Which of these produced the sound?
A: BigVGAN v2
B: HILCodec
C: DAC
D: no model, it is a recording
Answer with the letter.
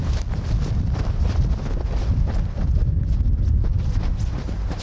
A